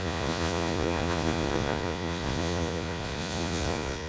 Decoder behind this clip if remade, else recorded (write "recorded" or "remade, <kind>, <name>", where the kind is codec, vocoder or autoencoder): remade, vocoder, Vocos